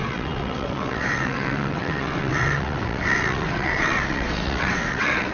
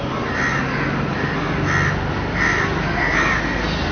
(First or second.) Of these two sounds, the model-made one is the first